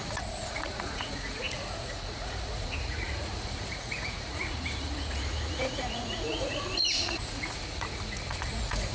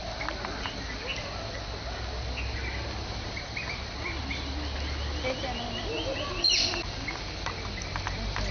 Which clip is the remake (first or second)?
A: first